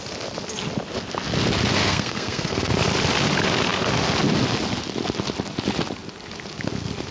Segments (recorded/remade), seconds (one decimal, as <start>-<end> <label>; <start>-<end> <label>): 0.0-1.8 recorded; 1.8-2.7 remade; 2.7-7.1 recorded